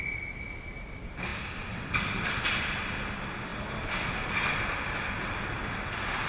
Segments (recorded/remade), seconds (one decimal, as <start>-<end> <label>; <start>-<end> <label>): 0.0-6.3 recorded